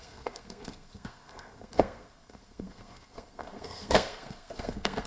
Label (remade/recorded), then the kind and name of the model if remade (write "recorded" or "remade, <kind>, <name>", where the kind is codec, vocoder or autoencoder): remade, codec, SNAC